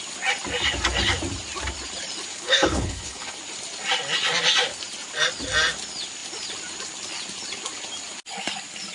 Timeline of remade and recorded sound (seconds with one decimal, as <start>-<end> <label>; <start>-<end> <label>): 0.0-2.3 recorded; 2.3-3.4 remade; 3.4-8.9 recorded